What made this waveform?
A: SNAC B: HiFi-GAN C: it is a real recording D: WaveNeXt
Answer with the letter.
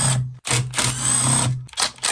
C